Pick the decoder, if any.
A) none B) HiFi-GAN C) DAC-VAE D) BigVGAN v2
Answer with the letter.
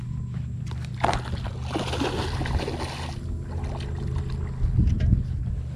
A